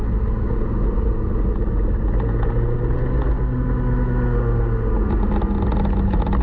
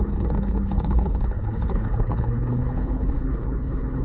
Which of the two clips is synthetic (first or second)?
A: second